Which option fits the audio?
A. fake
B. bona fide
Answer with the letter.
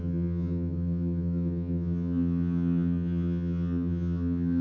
A